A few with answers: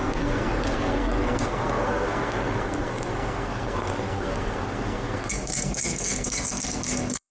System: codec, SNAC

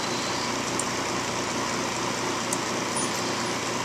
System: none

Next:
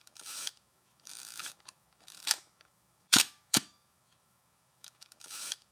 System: autoencoder, DAC-VAE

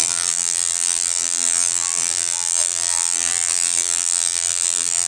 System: vocoder, BigVGAN v2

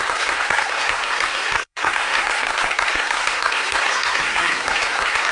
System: codec, SNAC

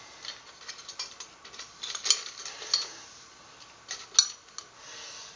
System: none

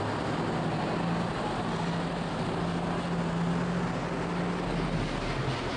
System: none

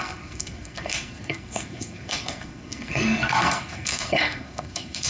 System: codec, SNAC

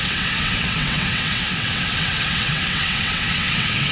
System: vocoder, WaveNeXt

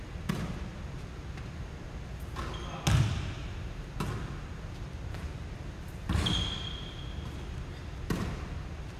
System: none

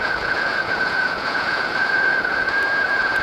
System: vocoder, Vocos